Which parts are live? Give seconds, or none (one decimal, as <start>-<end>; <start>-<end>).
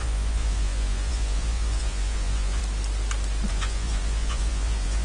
2.6-3.5